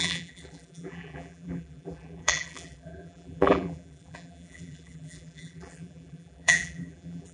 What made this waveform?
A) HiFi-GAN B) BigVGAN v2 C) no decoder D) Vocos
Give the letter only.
B